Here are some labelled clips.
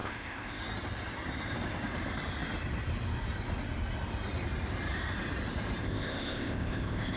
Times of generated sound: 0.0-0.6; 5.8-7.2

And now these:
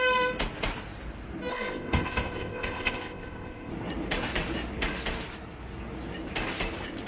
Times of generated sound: 1.5-3.7

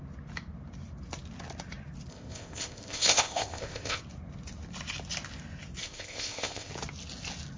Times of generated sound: 2.1-4.0; 5.8-6.7

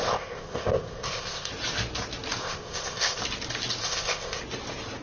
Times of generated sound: 0.0-1.5; 2.4-3.2; 3.8-4.4

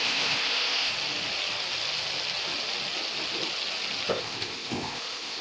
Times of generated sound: 0.0-0.9; 4.1-5.4

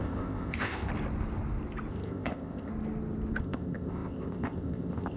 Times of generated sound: 0.0-0.9; 1.9-2.7; 3.4-5.2

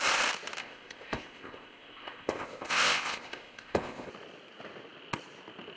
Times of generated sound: 0.6-4.1

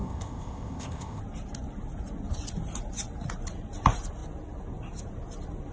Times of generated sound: 0.0-1.2